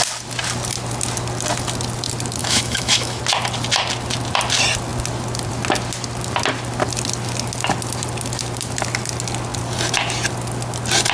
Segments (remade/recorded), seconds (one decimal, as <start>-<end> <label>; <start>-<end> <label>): 0.0-2.4 recorded; 2.4-3.2 remade; 3.2-11.1 recorded